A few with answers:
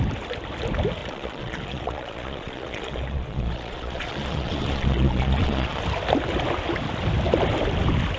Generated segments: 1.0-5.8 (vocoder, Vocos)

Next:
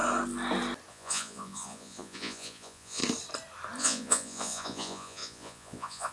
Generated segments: 0.9-3.0 (vocoder, Vocos); 3.8-6.1

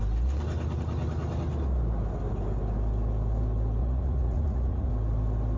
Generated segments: 3.8-4.9 (vocoder, Vocos)

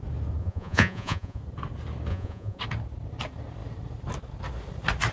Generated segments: 0.4-1.4 (vocoder, Vocos); 2.1-2.6

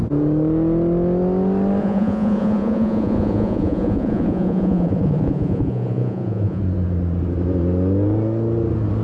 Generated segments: 1.8-6.6 (vocoder, Vocos)

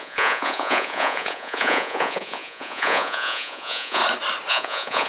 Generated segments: 0.0-4.0 (vocoder, Vocos); 4.5-5.1

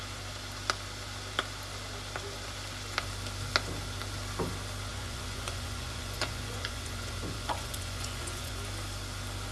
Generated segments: 4.9-8.6 (vocoder, Vocos)